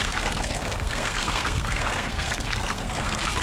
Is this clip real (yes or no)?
no